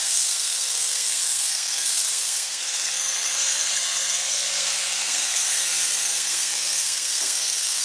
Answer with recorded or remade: remade